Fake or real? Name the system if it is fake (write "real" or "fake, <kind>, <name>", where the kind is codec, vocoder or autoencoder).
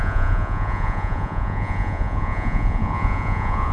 fake, vocoder, Vocos